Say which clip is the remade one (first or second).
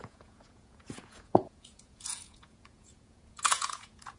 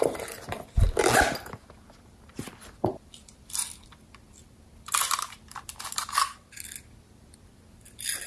first